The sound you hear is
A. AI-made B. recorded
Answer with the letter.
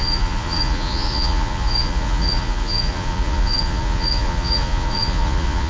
A